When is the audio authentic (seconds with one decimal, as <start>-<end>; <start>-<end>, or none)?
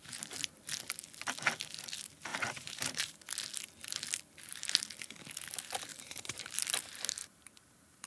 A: 0.6-2.3; 3.2-5.9; 6.6-7.2